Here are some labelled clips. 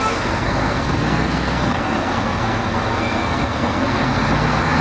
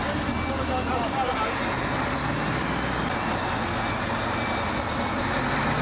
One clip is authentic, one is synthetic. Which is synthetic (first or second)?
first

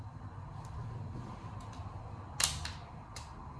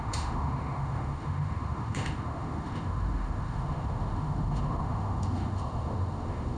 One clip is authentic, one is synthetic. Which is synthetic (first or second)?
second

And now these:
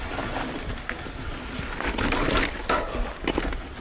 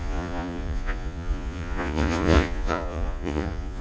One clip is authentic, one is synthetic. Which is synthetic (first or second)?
second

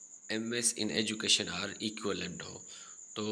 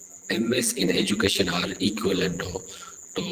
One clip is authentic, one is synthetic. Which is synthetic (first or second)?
second